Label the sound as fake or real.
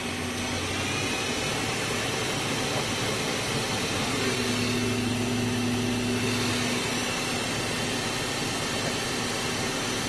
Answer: real